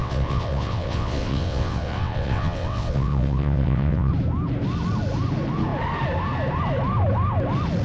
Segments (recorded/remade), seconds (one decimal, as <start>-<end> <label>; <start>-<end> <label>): 0.0-4.1 remade; 4.1-7.8 recorded